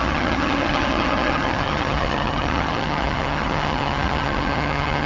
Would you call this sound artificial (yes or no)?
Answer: yes